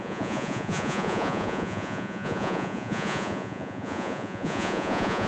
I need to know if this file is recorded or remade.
remade